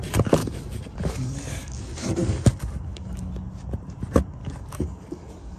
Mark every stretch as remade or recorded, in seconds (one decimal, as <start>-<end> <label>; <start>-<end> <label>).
0.0-0.4 recorded; 0.4-3.3 remade; 3.3-4.4 recorded; 4.4-5.6 remade